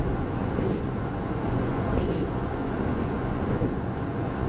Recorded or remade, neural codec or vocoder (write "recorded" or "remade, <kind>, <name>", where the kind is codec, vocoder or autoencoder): remade, vocoder, Vocos